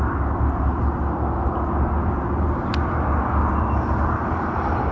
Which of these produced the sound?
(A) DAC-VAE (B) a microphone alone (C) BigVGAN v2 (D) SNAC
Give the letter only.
B